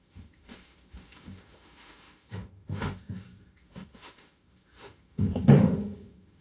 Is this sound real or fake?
fake